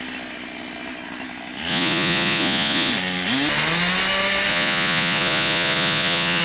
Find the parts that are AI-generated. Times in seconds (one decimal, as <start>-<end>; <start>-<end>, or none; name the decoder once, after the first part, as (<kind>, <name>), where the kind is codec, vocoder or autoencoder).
1.7-2.9 (vocoder, Vocos); 4.5-6.4